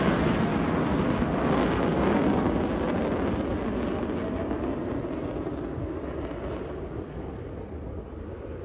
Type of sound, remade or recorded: recorded